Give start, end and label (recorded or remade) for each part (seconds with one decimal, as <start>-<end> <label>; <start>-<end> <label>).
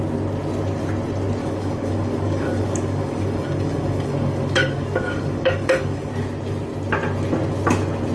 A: 0.0-1.4 recorded; 1.4-6.1 remade; 6.1-8.1 recorded